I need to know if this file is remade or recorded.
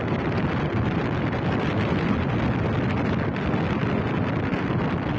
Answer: recorded